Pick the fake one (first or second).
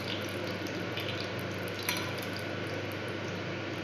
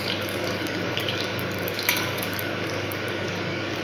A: second